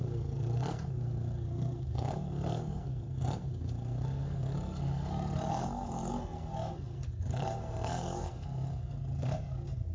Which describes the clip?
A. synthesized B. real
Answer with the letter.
A